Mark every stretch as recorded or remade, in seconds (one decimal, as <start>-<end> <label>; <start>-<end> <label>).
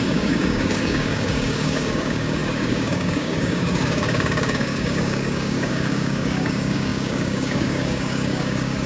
0.0-8.9 remade